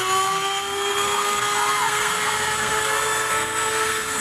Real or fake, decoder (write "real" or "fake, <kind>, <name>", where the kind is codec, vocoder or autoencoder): fake, codec, SNAC